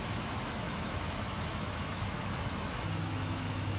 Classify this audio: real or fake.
fake